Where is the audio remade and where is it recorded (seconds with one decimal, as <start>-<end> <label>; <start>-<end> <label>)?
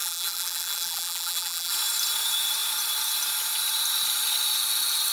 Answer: 0.0-1.7 remade; 1.7-5.1 recorded